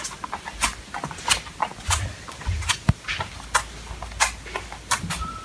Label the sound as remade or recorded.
recorded